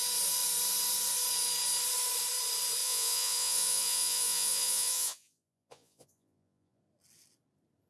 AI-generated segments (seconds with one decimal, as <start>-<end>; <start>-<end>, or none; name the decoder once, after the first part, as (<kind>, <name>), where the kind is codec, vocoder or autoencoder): 2.8-6.8 (vocoder, Vocos)